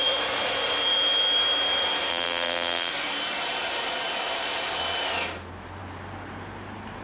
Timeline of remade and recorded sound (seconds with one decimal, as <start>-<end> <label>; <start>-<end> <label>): 0.0-2.1 recorded; 2.1-2.9 remade; 2.9-7.0 recorded